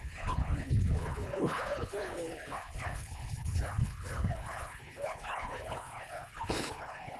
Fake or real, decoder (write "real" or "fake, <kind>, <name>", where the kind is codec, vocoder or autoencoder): fake, codec, HILCodec